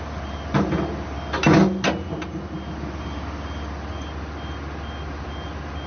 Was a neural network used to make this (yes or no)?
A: no